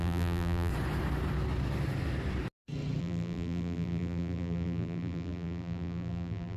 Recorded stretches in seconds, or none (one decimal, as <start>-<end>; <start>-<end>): 0.7-3.0